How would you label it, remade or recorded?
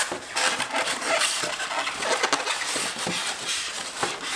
recorded